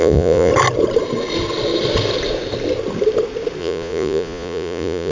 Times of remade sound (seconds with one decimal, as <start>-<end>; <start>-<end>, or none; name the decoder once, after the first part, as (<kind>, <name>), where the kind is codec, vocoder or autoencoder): 0.0-0.5 (vocoder, Vocos); 3.6-5.1

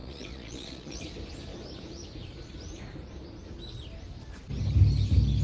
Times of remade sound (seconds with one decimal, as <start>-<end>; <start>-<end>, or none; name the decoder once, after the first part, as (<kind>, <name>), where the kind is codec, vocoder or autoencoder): 0.0-1.0 (vocoder, Vocos)

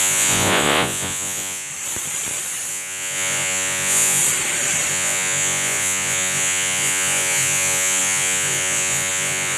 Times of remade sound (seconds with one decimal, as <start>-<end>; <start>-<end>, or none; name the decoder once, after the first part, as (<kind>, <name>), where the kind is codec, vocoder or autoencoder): 0.0-1.7 (vocoder, Vocos); 2.7-4.2; 4.9-9.6

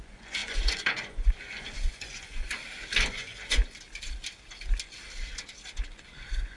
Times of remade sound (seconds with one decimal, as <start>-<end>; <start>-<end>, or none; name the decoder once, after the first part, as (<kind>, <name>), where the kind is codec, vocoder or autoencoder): 0.0-2.6 (vocoder, Vocos); 3.1-3.6; 5.9-6.6

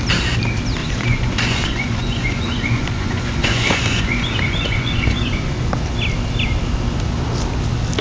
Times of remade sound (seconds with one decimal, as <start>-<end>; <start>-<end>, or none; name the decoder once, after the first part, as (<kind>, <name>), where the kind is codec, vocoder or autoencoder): 0.8-5.5 (vocoder, Vocos)

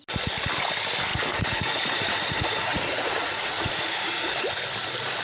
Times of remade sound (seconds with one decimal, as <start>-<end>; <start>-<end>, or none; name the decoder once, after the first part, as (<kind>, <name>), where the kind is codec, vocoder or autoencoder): 1.1-4.2 (vocoder, Vocos)

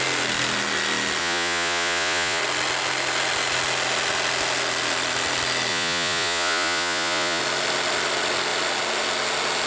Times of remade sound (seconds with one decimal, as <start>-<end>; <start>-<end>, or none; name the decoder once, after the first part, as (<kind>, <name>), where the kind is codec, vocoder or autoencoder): 1.2-2.4 (vocoder, Vocos); 5.7-7.4